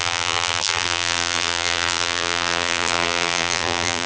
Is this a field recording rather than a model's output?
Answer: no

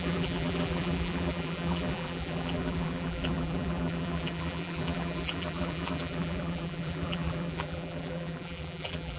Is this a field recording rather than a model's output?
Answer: no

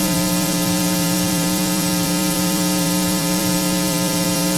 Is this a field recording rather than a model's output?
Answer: no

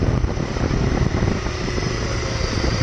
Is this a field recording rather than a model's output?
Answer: no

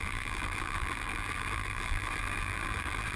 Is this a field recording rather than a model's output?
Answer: no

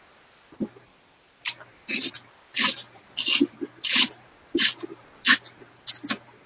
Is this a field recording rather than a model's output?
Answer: yes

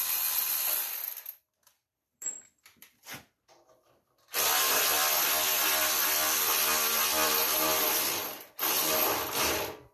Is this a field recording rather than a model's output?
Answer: no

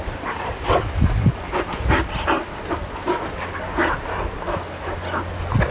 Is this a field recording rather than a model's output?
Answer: yes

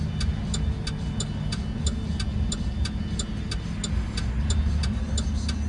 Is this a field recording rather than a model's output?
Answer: yes